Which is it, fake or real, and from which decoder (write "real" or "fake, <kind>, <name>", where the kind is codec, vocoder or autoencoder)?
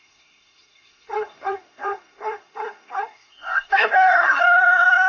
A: fake, codec, SNAC